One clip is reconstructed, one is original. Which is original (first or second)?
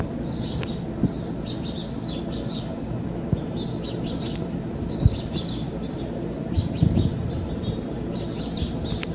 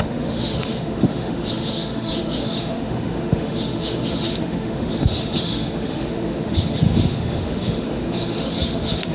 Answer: first